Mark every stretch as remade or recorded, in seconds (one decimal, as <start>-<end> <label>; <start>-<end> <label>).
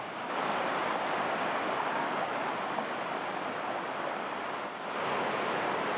0.0-0.4 remade; 0.4-1.5 recorded; 1.5-2.3 remade; 2.3-6.0 recorded